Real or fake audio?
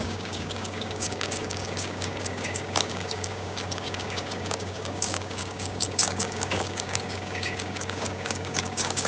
fake